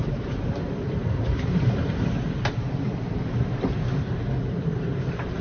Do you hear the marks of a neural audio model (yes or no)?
yes